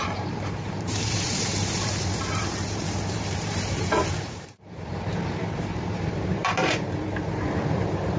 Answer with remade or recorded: remade